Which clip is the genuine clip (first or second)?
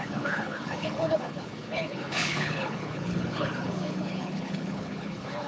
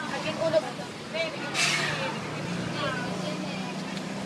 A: second